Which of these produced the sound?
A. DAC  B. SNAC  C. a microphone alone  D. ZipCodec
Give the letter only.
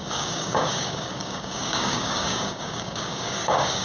A